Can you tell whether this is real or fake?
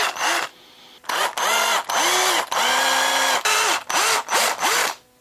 real